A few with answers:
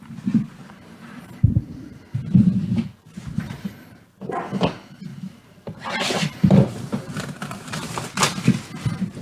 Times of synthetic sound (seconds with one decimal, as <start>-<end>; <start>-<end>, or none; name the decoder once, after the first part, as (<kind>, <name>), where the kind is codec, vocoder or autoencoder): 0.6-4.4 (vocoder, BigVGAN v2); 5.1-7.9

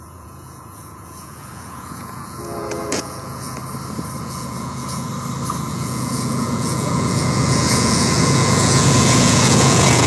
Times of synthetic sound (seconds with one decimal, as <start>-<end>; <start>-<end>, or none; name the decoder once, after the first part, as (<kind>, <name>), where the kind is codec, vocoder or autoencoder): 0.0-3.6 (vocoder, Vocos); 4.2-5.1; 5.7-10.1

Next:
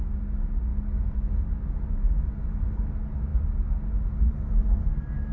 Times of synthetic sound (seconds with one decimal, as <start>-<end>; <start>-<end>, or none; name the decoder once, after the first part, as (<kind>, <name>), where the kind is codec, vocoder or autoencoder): none